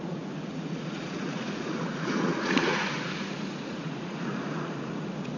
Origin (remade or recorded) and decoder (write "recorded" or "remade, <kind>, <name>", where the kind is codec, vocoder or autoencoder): remade, vocoder, Vocos